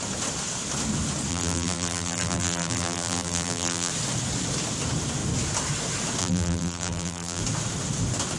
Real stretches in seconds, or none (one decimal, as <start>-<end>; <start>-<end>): 0.0-1.3; 3.9-6.2; 7.4-8.4